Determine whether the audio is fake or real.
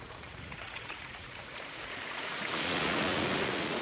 fake